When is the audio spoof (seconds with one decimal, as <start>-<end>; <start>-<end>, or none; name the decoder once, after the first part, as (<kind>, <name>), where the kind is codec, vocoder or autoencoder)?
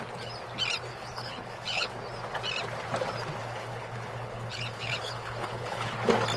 0.9-2.0 (codec, HILCodec); 3.4-5.9